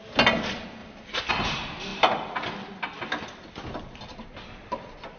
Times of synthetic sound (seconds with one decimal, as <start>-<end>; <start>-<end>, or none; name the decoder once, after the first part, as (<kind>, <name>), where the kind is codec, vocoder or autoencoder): none